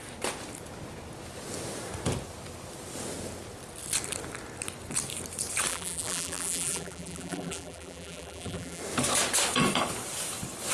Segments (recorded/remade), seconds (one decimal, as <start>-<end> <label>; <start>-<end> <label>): 0.0-5.7 recorded; 5.7-8.8 remade; 8.8-10.7 recorded

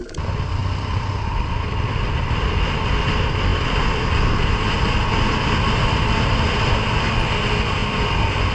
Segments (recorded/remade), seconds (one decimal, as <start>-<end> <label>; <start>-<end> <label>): 0.0-8.5 recorded

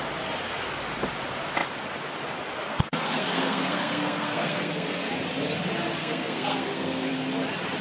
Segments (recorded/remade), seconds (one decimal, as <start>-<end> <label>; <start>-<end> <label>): 0.0-2.7 recorded; 2.7-5.1 remade; 5.1-6.0 recorded; 6.0-7.1 remade; 7.1-7.8 recorded